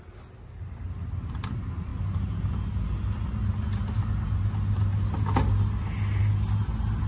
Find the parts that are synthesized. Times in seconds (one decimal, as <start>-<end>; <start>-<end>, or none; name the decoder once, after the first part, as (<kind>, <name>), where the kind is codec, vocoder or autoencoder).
none